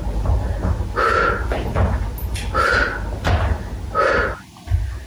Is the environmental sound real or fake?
real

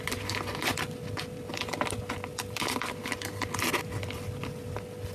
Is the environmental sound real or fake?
real